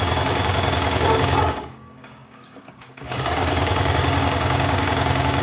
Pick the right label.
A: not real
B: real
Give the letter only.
A